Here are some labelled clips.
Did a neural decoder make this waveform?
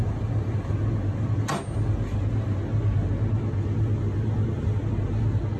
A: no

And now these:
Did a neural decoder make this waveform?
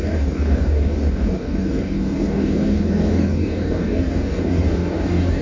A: yes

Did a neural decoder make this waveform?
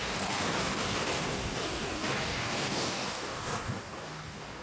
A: yes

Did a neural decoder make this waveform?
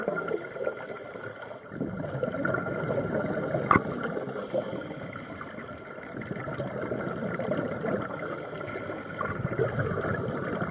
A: no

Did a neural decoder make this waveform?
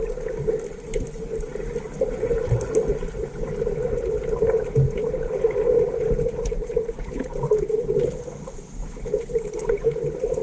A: no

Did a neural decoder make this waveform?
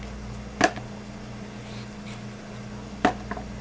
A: no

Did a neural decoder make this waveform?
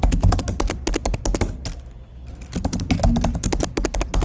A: no